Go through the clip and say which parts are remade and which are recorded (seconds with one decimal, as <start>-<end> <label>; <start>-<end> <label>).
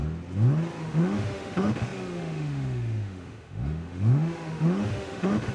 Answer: 0.0-0.8 recorded; 0.8-5.5 remade